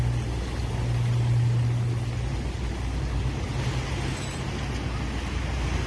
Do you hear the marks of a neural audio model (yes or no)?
no